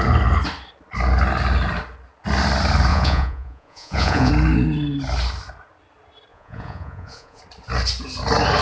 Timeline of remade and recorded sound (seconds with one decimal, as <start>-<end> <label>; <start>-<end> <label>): 0.0-2.9 recorded; 2.9-4.3 remade; 4.3-6.3 recorded; 6.3-7.4 remade; 7.4-8.6 recorded